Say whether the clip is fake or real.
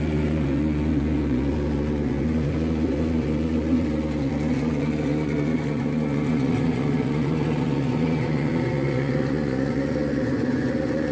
fake